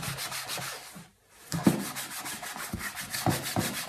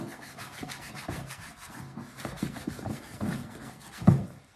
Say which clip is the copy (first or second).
second